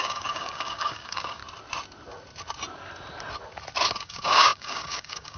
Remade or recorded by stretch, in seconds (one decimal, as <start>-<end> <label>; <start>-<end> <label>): 0.0-1.4 remade; 1.4-3.9 recorded; 3.9-5.4 remade